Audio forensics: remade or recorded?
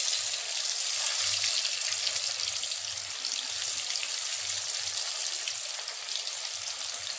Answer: recorded